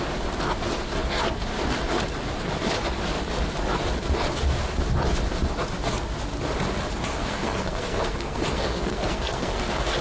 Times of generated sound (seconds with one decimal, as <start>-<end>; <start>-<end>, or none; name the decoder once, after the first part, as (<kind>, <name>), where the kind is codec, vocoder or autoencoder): 7.1-9.6 (codec, SNAC)

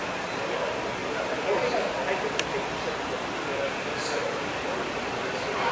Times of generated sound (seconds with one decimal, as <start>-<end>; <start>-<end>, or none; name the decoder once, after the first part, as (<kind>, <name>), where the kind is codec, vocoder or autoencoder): 0.0-1.0 (vocoder, BigVGAN v2); 4.4-5.7

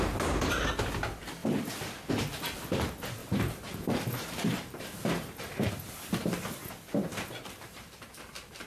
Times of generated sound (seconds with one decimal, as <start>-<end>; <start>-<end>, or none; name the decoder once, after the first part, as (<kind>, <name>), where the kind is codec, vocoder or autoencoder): 3.2-5.7 (vocoder, BigVGAN v2); 7.0-8.7

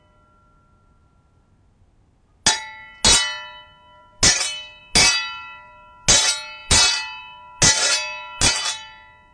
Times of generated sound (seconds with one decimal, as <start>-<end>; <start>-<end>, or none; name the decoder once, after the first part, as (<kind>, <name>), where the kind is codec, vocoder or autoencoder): none

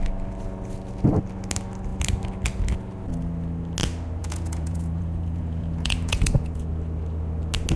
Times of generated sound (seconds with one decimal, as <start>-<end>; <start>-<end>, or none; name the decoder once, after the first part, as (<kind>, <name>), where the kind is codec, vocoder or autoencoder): 4.2-6.7 (vocoder, Vocos)